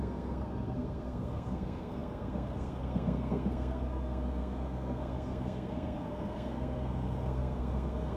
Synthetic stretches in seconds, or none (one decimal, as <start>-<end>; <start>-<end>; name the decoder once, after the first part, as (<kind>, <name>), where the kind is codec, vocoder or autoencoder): 0.0-8.2 (codec, SNAC)